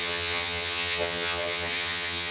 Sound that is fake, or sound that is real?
fake